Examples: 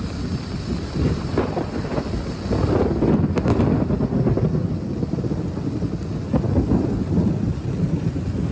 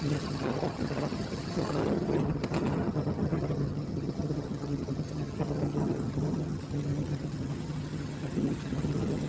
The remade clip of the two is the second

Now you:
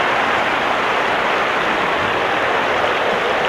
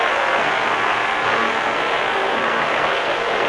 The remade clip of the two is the second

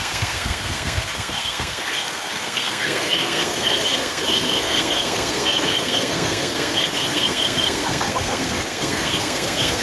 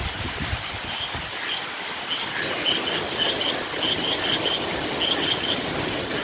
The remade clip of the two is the first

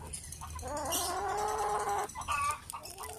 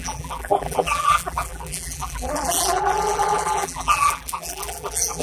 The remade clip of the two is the second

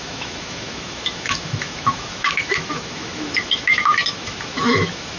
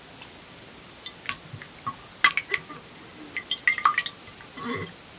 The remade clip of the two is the first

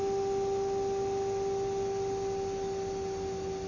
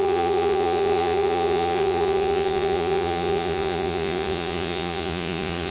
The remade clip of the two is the second